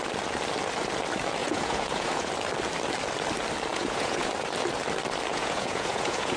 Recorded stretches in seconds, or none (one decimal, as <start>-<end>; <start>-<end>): 0.0-1.4; 2.3-3.7; 4.3-5.3